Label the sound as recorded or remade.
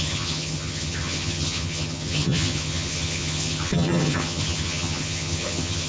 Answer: remade